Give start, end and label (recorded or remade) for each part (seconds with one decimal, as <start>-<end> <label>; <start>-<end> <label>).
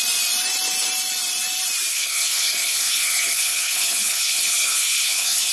0.0-1.9 recorded; 1.9-5.5 remade